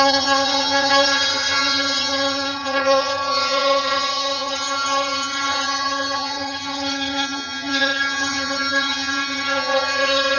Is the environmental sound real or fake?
fake